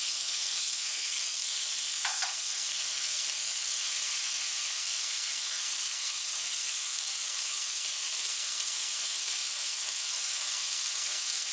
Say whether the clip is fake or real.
fake